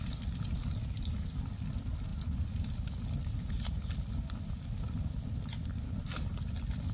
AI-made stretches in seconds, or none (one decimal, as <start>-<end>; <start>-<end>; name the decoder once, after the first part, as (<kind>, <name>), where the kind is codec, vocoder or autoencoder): none